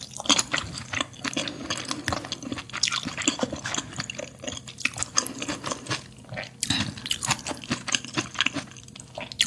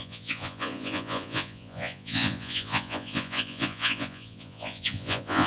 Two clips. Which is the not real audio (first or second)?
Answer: second